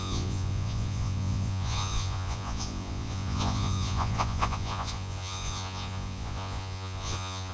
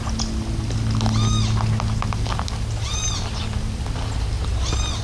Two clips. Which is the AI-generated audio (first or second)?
first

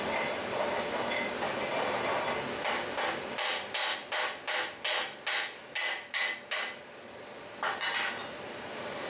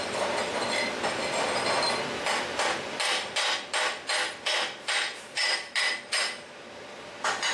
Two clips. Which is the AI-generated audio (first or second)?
second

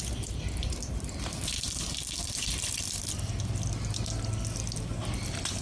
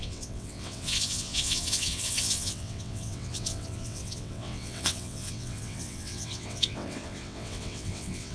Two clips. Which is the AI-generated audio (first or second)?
second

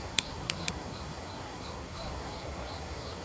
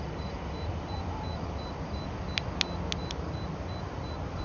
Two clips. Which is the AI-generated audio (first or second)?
first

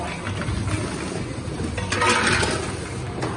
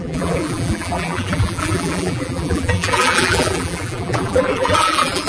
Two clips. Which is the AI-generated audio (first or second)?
second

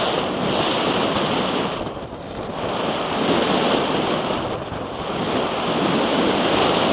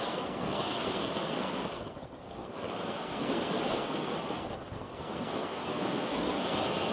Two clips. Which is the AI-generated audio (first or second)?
second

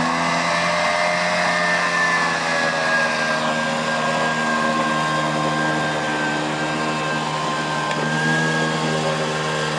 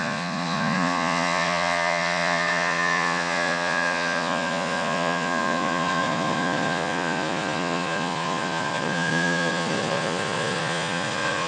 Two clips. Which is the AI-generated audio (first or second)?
second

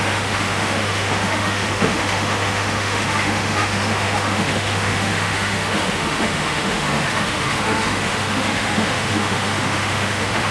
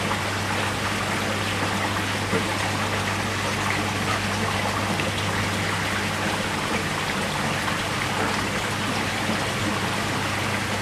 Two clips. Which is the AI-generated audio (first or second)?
first